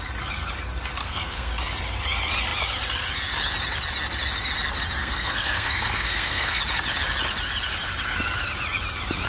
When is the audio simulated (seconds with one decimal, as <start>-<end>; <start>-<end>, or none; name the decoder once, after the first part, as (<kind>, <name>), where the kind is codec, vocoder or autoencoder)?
1.0-1.5 (codec, SNAC); 5.0-6.6